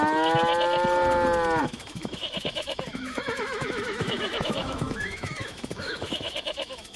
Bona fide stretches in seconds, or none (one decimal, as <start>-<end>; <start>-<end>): 0.5-1.6